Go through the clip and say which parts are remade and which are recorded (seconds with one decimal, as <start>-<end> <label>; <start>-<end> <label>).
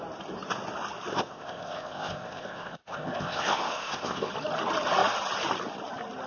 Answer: 0.0-1.1 recorded; 1.1-4.3 remade; 4.3-6.3 recorded